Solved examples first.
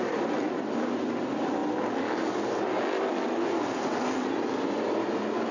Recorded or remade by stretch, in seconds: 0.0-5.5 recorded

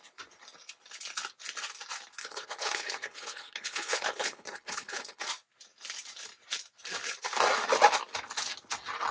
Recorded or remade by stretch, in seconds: 0.0-2.2 recorded; 2.2-5.2 remade; 5.2-9.1 recorded

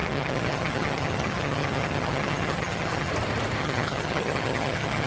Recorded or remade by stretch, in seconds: 0.0-3.1 remade; 3.1-3.6 recorded; 3.6-5.1 remade

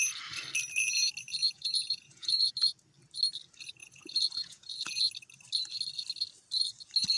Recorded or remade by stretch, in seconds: 0.0-1.4 recorded; 1.4-2.5 remade; 2.5-3.8 recorded; 3.8-5.0 remade; 5.0-7.2 recorded